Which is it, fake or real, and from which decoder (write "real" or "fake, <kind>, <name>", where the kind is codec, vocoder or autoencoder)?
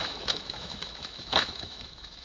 fake, autoencoder, DAC-VAE